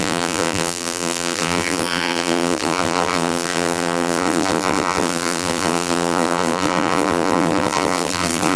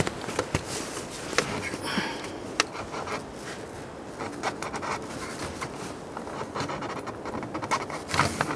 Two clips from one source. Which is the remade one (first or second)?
first